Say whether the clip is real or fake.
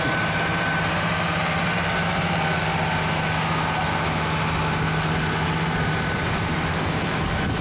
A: real